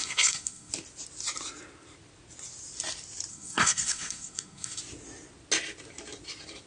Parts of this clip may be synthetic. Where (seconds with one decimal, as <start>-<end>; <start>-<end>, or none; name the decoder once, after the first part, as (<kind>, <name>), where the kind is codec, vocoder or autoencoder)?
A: 0.0-0.7 (codec, SNAC); 3.3-4.8